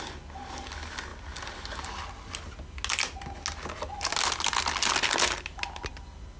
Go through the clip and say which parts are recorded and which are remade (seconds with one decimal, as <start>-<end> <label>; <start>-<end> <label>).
0.0-6.4 recorded